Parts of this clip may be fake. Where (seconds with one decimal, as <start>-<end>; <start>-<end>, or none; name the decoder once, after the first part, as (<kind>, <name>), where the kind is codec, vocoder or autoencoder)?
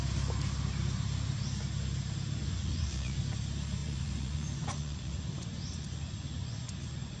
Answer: 2.4-3.2 (vocoder, Vocos); 3.8-7.2